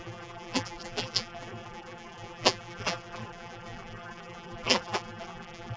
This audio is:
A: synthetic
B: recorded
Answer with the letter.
A